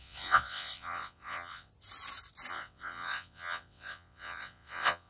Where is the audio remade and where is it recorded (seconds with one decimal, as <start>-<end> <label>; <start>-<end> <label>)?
0.0-1.7 remade; 1.7-2.5 recorded; 2.5-5.1 remade